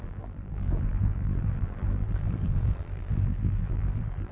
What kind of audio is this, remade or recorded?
remade